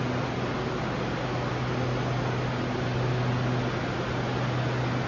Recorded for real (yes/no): yes